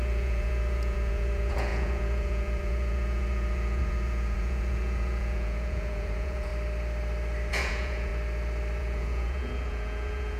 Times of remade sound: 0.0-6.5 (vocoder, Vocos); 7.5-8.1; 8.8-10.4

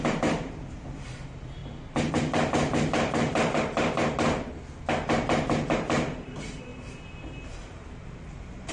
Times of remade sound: 0.0-1.6 (vocoder, BigVGAN v2); 2.1-4.0; 5.1-6.7; 8.0-8.7

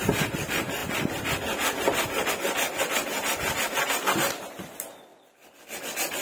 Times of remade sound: none

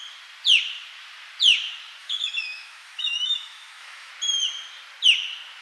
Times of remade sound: 2.0-4.1 (autoencoder, DAC-VAE)

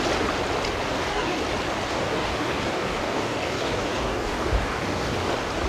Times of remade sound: 0.9-1.4 (codec, DAC); 1.9-5.3